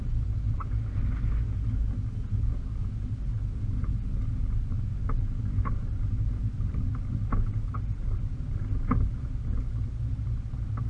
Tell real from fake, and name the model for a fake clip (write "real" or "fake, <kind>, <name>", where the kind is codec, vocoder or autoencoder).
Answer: real